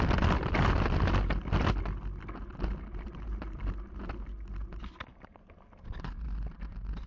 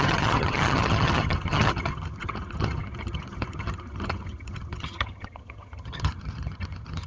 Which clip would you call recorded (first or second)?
first